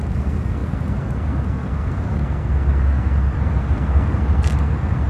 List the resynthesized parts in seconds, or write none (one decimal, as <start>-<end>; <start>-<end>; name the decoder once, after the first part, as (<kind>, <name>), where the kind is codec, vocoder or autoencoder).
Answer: 0.0-5.1 (codec, SNAC)